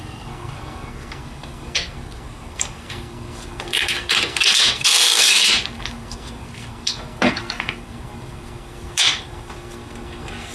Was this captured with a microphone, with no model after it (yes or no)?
no